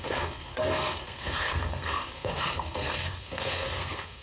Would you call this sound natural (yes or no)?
no